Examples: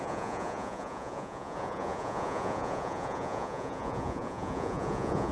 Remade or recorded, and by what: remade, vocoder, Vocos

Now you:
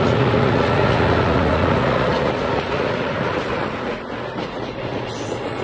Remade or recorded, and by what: remade, vocoder, Vocos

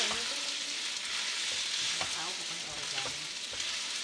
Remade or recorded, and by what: recorded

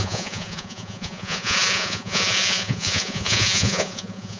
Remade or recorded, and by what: remade, vocoder, Vocos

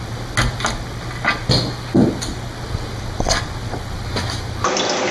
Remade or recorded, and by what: recorded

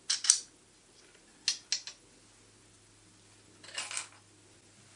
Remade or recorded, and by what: recorded